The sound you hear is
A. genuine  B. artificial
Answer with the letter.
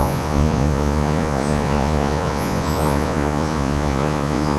B